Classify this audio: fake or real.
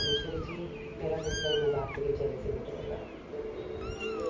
real